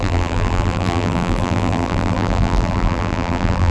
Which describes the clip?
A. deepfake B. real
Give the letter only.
A